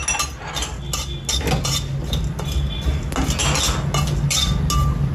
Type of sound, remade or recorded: recorded